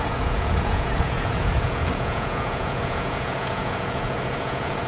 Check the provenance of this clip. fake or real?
fake